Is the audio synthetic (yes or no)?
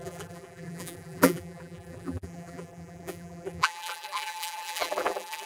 yes